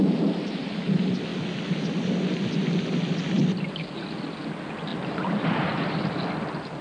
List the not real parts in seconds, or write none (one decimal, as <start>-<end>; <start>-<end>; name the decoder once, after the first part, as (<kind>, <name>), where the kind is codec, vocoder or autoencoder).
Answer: none